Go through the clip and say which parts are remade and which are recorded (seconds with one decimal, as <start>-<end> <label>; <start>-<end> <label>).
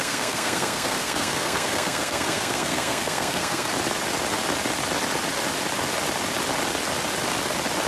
0.0-3.7 remade; 3.7-7.9 recorded